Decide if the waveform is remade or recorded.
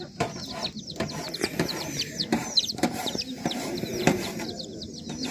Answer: remade